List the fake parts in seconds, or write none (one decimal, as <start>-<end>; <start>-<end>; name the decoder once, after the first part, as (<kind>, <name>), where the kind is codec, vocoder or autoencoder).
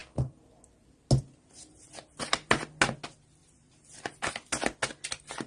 none